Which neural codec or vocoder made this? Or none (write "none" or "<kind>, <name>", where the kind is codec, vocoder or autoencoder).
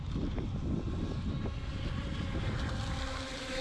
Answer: none